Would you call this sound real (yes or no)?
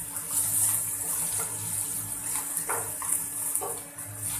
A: yes